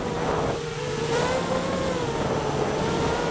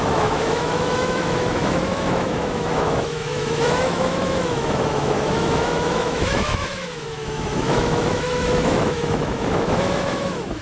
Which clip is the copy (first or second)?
second